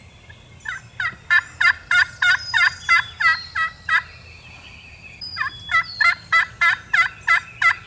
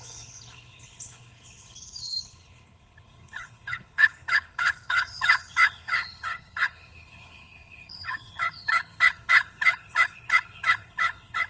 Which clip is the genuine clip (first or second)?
first